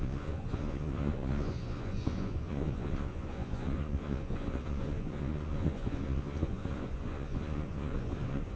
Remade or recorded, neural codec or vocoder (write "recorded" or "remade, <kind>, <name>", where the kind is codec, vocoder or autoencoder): remade, vocoder, Vocos